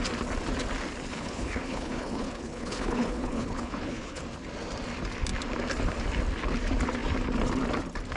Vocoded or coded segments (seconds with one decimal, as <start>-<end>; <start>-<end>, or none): 1.1-4.2